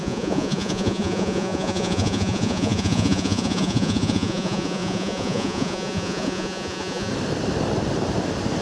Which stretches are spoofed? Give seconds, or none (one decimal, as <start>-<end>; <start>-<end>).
0.0-7.1